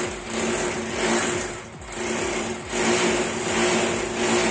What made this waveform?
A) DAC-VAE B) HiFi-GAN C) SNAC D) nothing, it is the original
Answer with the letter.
D